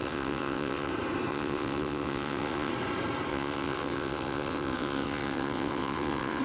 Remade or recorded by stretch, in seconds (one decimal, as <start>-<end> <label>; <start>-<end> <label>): 0.0-0.9 remade; 0.9-1.3 recorded; 1.3-2.7 remade; 2.7-3.3 recorded; 3.3-6.4 remade